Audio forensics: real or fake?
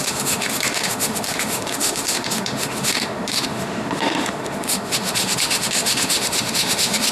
fake